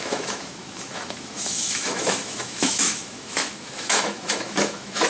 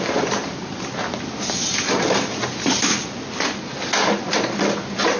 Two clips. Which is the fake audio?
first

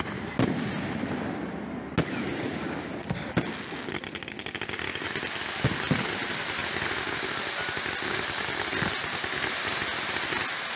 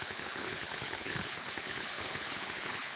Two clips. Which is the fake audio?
second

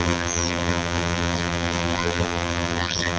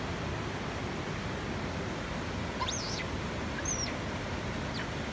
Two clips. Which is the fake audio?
first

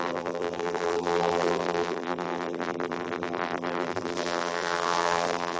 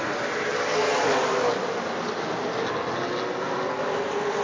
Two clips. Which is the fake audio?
first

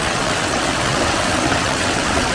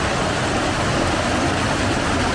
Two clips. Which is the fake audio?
first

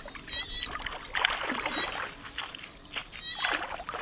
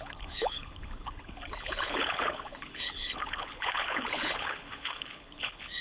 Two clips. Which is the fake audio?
second